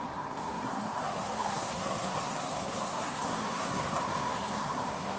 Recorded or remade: remade